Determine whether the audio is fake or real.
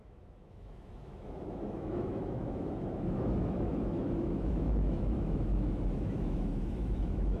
fake